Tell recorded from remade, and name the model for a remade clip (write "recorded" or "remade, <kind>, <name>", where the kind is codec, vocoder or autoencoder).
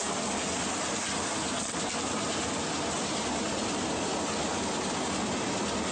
recorded